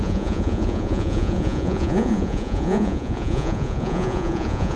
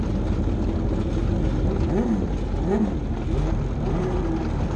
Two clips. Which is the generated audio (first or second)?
first